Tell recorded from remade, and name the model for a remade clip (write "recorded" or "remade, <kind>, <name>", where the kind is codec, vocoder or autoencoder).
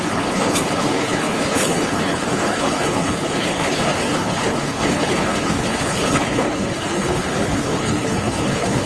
remade, codec, HILCodec